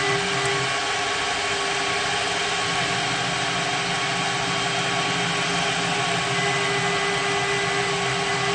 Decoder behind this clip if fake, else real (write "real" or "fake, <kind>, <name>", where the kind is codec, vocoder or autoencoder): real